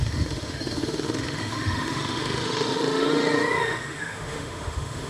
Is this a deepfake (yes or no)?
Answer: yes